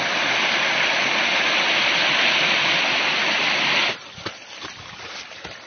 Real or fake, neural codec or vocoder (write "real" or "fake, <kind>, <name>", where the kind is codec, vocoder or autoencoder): real